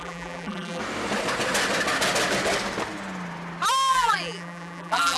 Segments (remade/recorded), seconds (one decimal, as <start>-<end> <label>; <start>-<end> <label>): 0.0-0.8 remade; 0.8-3.9 recorded; 3.9-5.2 remade